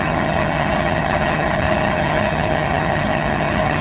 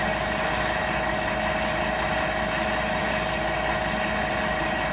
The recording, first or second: second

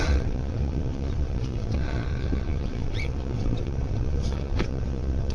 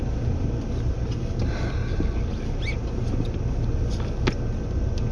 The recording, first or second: second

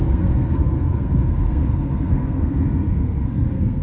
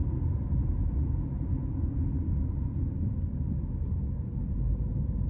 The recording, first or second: second